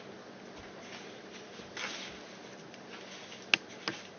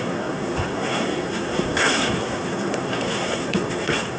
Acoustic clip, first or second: first